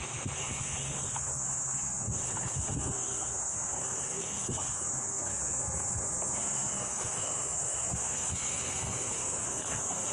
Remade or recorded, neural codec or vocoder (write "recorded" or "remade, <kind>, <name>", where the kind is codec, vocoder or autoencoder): remade, codec, SNAC